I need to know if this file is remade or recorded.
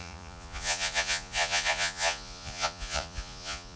remade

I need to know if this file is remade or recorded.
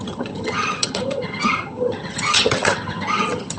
remade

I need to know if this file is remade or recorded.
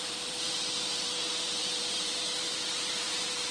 remade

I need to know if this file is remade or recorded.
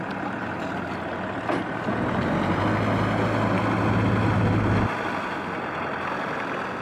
recorded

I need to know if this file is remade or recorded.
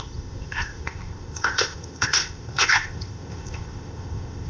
remade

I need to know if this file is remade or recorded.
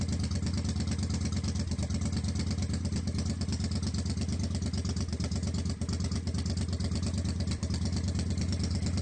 recorded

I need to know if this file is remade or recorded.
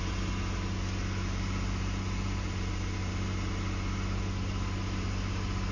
recorded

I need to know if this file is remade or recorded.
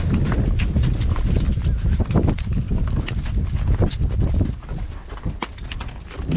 recorded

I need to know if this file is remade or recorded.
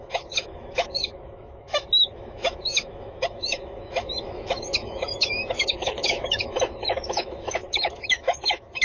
remade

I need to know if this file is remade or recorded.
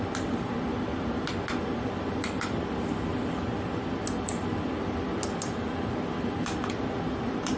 recorded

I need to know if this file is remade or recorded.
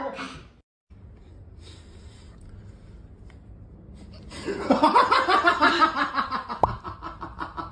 recorded